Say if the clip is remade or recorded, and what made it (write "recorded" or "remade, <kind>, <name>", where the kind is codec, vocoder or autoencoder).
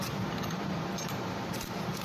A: remade, vocoder, BigVGAN v2